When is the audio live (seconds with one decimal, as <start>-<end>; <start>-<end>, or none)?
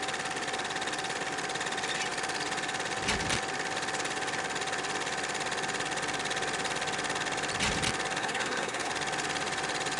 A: 0.0-8.2; 8.9-10.0